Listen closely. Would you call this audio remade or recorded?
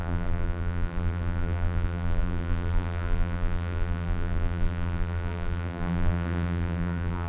remade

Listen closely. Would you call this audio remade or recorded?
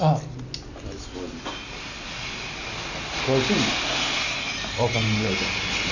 recorded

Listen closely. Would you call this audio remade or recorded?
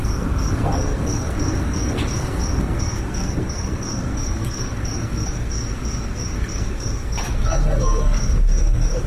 remade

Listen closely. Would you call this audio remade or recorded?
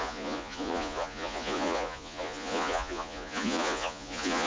remade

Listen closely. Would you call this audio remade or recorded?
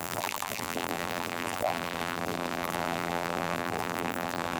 remade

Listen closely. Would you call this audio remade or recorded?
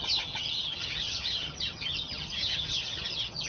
remade